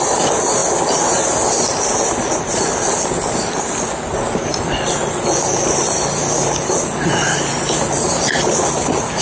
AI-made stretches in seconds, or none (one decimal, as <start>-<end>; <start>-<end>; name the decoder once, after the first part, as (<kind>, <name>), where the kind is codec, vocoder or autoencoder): none